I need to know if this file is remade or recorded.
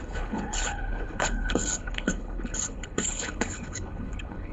remade